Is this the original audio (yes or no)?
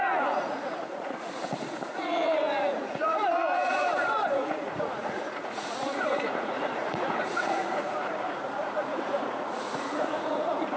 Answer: no